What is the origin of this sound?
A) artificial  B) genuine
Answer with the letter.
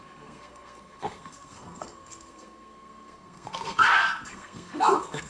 A